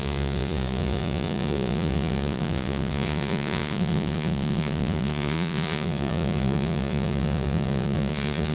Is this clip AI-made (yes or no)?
yes